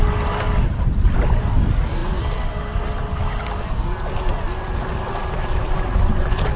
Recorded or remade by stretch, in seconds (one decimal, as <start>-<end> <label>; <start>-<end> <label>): 0.0-6.6 recorded

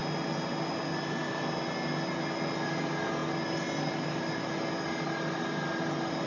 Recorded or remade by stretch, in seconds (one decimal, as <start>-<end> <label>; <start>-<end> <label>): 0.0-6.3 recorded

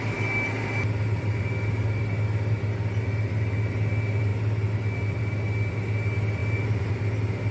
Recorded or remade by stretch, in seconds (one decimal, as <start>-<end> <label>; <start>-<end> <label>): 0.0-7.5 recorded

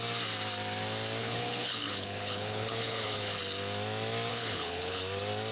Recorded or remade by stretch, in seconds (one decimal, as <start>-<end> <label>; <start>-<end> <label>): 0.0-1.2 recorded; 1.2-3.4 remade; 3.4-4.3 recorded; 4.3-5.0 remade; 5.0-5.5 recorded